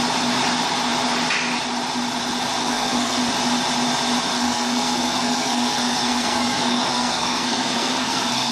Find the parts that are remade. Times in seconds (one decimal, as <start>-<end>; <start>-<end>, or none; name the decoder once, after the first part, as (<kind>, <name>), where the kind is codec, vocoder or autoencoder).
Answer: 2.6-3.2 (codec, SNAC); 4.3-8.5